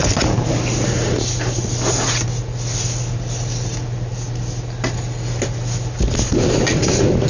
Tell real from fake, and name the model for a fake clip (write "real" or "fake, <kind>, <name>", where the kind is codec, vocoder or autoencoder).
real